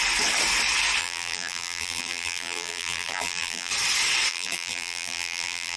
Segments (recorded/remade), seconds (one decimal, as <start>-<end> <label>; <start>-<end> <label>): 0.0-1.0 recorded; 1.0-3.7 remade; 3.7-4.3 recorded; 4.3-5.8 remade